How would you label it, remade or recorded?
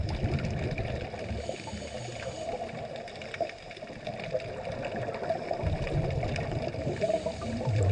recorded